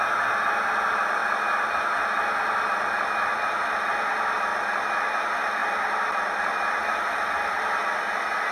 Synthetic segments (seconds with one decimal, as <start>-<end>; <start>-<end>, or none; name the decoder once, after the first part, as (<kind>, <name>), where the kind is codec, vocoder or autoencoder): 5.6-7.8 (vocoder, BigVGAN v2)